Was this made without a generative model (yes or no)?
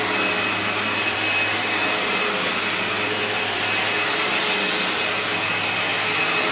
yes